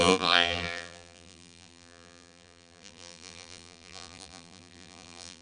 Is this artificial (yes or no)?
yes